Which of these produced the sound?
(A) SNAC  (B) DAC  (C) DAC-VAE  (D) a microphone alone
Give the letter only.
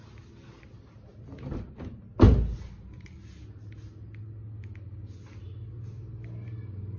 D